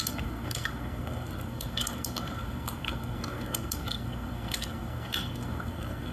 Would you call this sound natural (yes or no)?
no